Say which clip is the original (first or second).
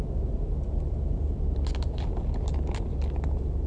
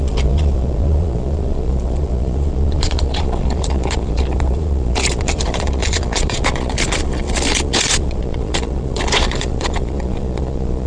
first